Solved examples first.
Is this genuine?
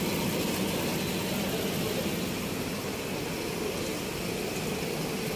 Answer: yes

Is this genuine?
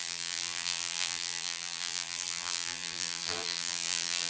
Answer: no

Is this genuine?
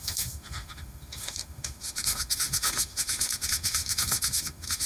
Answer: no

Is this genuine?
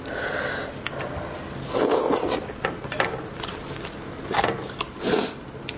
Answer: yes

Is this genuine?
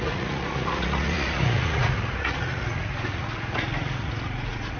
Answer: no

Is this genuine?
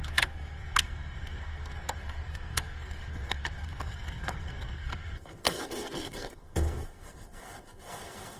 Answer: no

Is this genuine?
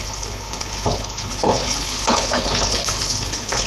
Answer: no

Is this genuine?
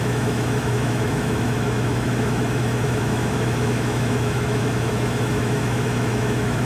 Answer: no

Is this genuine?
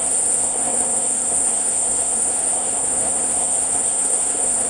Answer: no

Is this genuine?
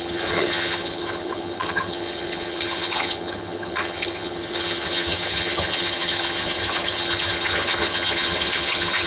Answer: no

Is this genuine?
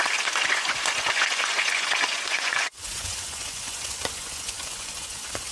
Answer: no